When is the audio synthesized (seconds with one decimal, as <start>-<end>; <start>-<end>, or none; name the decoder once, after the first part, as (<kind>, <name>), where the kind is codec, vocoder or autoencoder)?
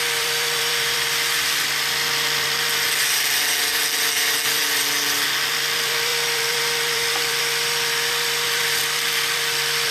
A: 0.0-9.9 (vocoder, BigVGAN v2)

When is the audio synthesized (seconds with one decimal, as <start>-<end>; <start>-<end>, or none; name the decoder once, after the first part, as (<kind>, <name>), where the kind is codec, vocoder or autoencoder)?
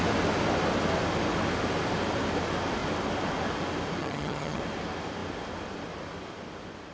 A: 4.0-4.6 (vocoder, HiFi-GAN)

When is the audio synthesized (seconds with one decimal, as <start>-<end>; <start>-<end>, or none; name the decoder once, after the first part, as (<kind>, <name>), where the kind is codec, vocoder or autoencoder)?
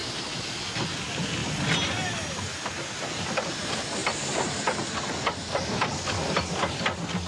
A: 0.0-0.6 (vocoder, BigVGAN v2); 4.0-4.8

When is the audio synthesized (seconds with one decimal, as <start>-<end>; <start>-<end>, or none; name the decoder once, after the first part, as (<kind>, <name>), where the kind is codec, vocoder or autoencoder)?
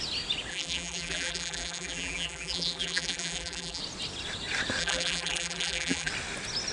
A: 0.5-3.8 (vocoder, BigVGAN v2); 4.8-6.1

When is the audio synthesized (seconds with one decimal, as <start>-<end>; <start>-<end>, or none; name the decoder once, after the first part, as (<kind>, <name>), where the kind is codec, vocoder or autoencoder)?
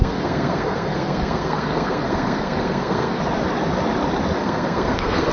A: 0.0-3.2 (codec, SNAC); 4.4-5.3